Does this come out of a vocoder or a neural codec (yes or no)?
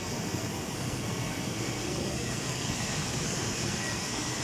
yes